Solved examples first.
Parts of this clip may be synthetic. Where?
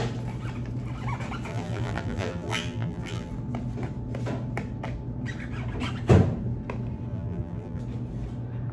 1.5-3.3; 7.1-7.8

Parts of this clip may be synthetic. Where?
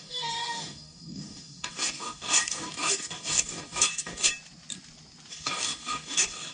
0.0-4.3; 5.3-6.5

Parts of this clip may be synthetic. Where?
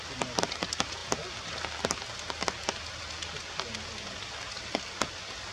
none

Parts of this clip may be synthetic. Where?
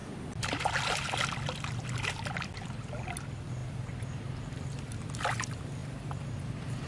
5.8-6.9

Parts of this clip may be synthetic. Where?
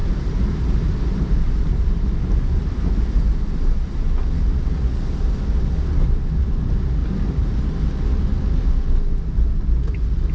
0.0-2.0; 7.0-7.8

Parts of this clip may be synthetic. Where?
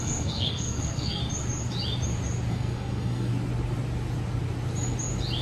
0.0-1.2; 2.5-3.3